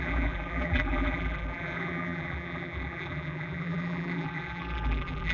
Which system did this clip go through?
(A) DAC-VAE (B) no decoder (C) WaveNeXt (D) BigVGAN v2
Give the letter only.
D